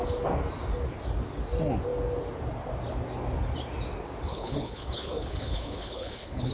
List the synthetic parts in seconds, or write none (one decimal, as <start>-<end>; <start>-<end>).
4.3-6.5